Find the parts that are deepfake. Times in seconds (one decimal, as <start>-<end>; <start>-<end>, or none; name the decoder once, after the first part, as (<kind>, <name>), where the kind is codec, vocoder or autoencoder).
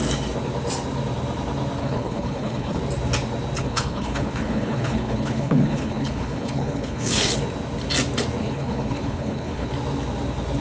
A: 1.8-2.8 (codec, HILCodec); 3.6-7.3; 8.4-9.7